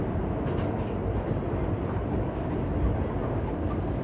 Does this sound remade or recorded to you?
recorded